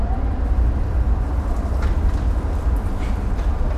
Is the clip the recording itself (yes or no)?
yes